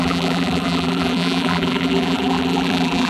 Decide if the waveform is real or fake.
fake